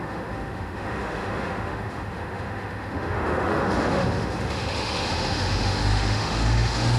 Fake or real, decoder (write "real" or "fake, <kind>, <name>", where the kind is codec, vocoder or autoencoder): fake, autoencoder, DAC-VAE